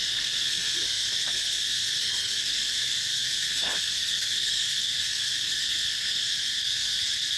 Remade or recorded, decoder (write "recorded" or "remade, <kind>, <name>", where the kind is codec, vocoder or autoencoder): remade, codec, SNAC